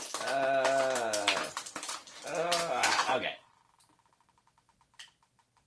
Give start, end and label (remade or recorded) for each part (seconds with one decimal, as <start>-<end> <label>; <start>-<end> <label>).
0.0-5.7 recorded